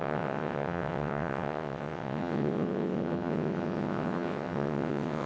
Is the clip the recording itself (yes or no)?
no